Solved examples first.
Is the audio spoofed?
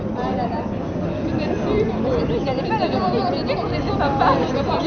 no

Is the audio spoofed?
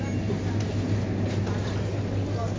no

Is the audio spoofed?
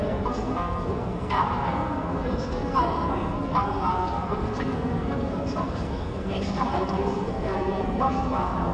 yes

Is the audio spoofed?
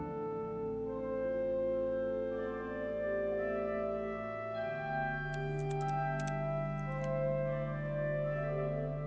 no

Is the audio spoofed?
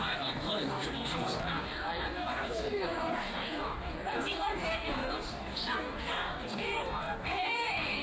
yes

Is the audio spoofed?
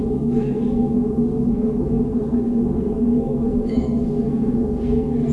yes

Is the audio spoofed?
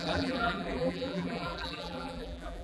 yes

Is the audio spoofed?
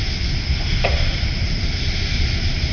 no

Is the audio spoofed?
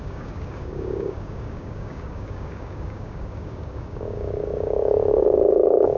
yes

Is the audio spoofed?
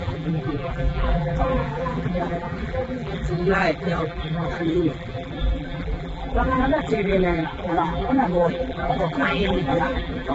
yes